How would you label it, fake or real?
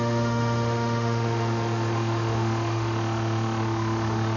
fake